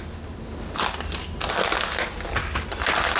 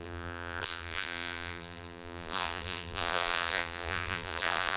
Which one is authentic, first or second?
first